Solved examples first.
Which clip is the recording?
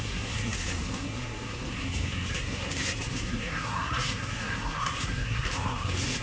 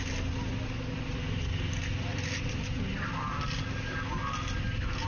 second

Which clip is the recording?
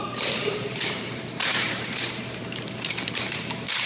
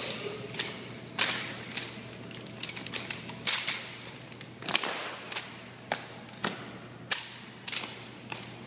second